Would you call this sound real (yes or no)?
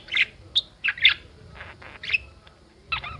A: yes